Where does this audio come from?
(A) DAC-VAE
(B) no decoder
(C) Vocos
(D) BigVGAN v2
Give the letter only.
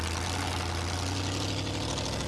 B